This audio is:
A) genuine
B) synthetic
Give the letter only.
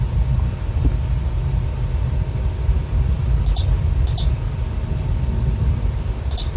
A